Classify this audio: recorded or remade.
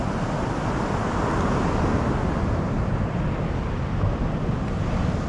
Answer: recorded